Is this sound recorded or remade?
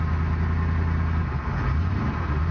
recorded